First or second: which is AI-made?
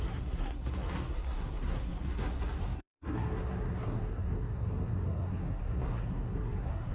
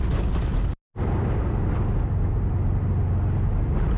first